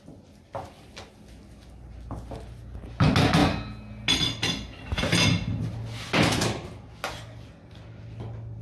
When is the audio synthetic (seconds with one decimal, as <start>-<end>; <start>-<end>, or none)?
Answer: none